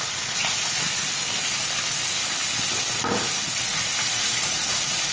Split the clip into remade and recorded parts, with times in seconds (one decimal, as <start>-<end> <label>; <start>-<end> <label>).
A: 0.0-1.0 remade; 1.0-3.6 recorded; 3.6-5.1 remade